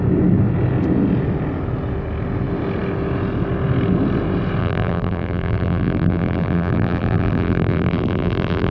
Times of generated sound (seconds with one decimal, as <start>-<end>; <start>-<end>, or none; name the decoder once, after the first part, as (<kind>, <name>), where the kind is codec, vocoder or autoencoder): 4.6-8.7 (vocoder, BigVGAN v2)